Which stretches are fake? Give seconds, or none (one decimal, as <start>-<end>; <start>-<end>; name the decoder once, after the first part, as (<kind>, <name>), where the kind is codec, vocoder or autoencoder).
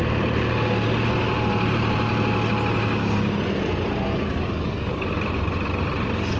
4.1-5.1 (codec, DAC)